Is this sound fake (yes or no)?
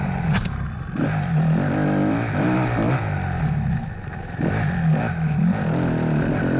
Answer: no